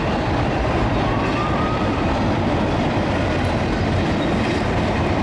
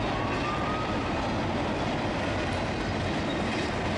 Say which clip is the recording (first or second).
second